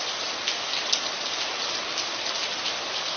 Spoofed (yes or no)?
no